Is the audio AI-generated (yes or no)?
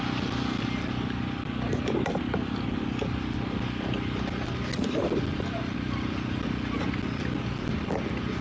no